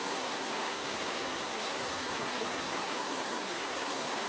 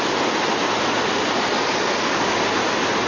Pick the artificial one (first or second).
first